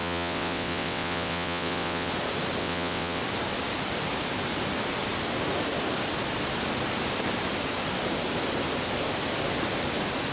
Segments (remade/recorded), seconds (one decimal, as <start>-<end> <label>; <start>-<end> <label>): 0.0-2.1 remade; 2.1-2.6 recorded; 2.6-3.2 remade; 3.2-10.3 recorded